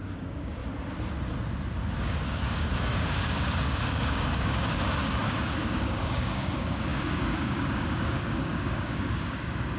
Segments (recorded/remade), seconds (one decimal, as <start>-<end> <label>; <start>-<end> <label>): 0.0-0.6 remade; 0.6-2.0 recorded; 2.0-9.8 remade